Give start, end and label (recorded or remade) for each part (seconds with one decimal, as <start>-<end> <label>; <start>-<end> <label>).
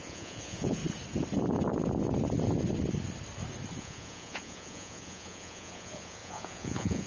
0.0-0.8 remade; 0.8-3.8 recorded; 3.8-7.1 remade